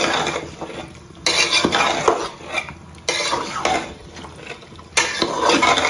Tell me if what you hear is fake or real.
real